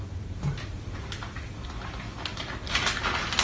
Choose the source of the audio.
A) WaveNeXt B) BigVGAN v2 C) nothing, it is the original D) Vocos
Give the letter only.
C